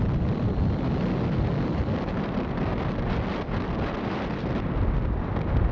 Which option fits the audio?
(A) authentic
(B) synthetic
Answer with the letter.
A